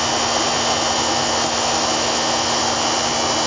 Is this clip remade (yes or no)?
no